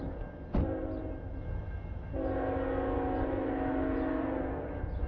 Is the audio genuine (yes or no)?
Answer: yes